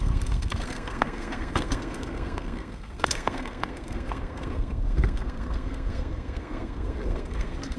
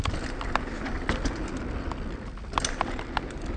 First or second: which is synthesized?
first